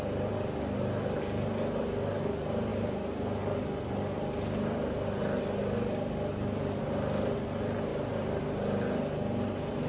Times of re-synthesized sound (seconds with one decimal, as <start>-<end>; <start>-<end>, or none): none